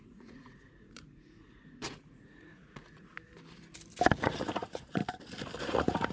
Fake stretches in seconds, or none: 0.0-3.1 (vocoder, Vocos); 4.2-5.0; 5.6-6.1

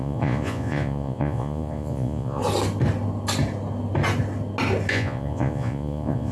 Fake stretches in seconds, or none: 0.0-2.4 (vocoder, Vocos); 4.9-6.3

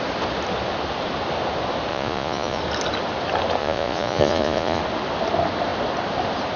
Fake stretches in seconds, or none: 1.9-2.6 (vocoder, Vocos); 3.6-4.8

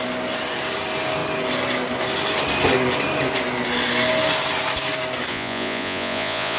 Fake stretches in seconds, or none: 5.3-6.6 (vocoder, Vocos)

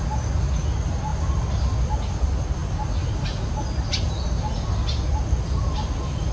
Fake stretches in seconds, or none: none

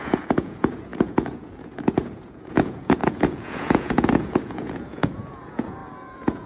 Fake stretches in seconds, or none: 0.0-6.5 (vocoder, Vocos)

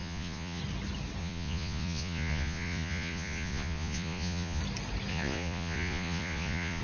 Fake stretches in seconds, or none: 0.0-0.6 (vocoder, Vocos); 1.2-4.6; 5.1-6.8